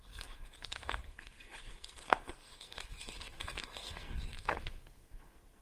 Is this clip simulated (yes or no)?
yes